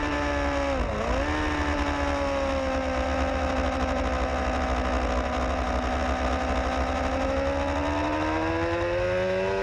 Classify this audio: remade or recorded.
recorded